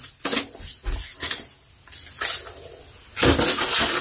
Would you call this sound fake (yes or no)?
no